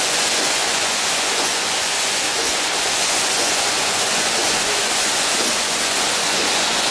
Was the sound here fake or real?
fake